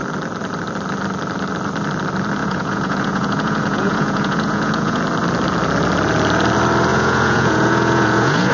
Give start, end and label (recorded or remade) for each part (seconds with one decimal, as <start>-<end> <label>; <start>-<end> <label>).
0.0-2.4 recorded; 2.4-5.0 remade; 5.0-6.9 recorded; 6.9-8.5 remade